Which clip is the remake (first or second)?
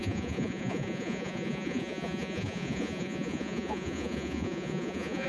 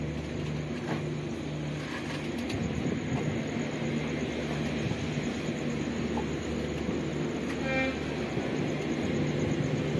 first